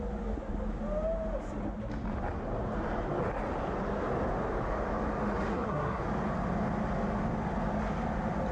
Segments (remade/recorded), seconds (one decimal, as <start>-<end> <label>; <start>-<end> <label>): 0.0-5.5 recorded; 5.5-6.0 remade; 6.0-8.5 recorded